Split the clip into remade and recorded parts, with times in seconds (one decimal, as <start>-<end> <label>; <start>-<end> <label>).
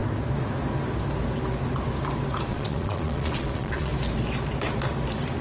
0.0-2.5 recorded; 2.5-3.9 remade; 3.9-5.4 recorded